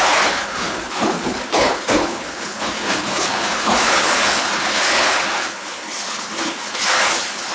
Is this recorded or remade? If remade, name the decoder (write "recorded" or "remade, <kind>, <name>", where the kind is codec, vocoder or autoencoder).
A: remade, codec, HILCodec